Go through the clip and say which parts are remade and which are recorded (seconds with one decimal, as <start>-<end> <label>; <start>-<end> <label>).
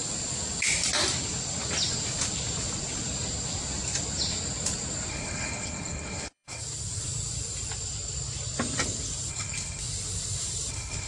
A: 0.0-5.1 recorded; 5.1-6.6 remade; 6.6-9.3 recorded; 9.3-9.8 remade; 9.8-10.7 recorded; 10.7-11.1 remade